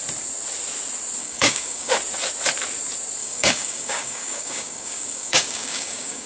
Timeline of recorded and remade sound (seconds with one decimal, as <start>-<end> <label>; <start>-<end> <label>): 0.0-1.2 recorded; 1.2-1.9 remade; 1.9-3.2 recorded; 3.2-6.3 remade